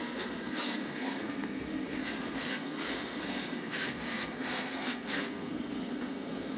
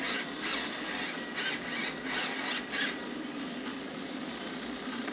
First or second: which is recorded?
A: second